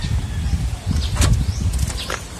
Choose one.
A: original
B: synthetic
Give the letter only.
B